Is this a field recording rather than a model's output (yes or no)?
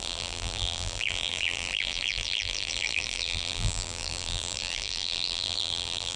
no